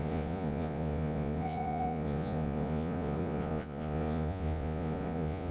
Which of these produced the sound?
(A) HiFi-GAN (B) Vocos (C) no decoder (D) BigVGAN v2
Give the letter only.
B